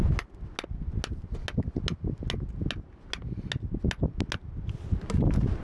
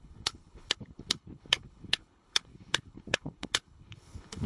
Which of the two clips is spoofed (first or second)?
second